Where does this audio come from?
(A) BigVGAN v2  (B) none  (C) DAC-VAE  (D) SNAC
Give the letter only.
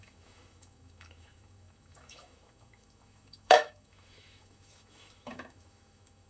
C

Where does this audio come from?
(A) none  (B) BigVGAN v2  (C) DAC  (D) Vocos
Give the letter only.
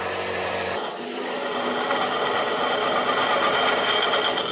A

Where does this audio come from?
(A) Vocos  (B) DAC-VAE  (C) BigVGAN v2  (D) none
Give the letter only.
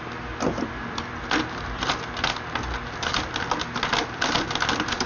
D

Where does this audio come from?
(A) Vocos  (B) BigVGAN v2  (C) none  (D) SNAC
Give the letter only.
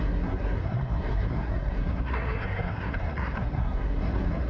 D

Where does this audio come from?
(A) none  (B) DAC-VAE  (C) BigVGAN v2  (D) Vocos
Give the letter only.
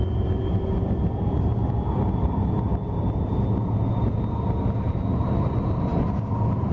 A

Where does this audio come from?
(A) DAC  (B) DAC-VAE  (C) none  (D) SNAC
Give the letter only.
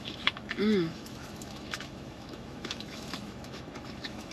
B